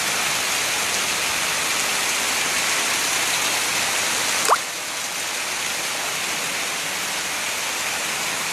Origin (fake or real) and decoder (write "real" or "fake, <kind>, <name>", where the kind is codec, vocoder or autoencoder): real